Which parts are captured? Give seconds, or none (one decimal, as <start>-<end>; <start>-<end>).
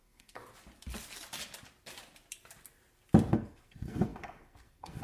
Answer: 0.4-3.3